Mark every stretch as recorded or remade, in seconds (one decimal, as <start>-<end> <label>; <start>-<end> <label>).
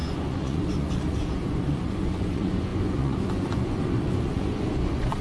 0.0-5.2 remade